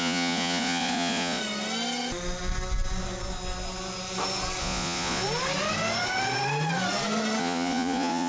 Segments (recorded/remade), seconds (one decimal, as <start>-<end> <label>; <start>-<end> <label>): 0.0-1.4 remade; 1.4-4.6 recorded; 4.6-5.2 remade; 5.2-7.4 recorded; 7.4-8.3 remade